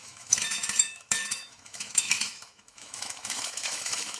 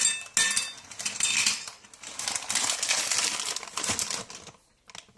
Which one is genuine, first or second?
second